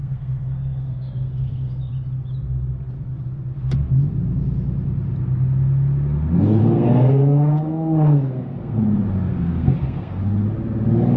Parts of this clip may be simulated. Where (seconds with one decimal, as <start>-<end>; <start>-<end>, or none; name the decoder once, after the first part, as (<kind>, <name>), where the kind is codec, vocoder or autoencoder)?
0.0-1.9 (codec, SNAC); 6.6-8.8; 9.3-10.2